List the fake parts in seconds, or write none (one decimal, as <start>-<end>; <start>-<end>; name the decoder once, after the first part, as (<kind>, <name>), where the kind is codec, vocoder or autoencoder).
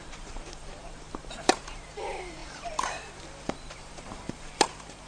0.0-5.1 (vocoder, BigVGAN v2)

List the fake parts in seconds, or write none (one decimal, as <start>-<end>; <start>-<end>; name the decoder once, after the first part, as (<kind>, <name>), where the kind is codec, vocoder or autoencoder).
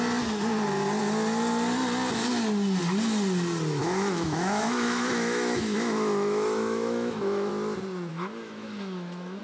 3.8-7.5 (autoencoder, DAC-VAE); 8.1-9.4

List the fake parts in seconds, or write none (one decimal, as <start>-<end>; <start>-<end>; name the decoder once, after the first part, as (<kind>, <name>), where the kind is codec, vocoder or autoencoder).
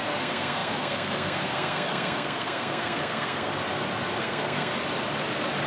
0.0-3.5 (codec, SNAC); 4.2-4.7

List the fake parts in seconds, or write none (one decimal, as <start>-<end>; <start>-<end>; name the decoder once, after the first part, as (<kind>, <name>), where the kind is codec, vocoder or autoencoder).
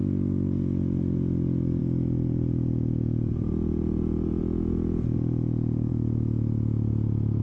0.0-7.4 (vocoder, Vocos)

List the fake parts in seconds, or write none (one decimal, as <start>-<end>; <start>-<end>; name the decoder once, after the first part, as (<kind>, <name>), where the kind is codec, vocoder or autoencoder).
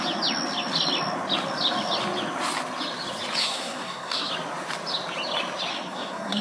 3.4-4.3 (codec, SNAC); 5.7-6.4